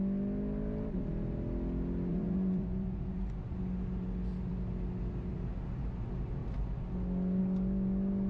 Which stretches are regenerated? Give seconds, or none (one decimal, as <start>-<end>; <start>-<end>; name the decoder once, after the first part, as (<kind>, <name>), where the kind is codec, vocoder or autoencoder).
2.1-3.6 (vocoder, Vocos)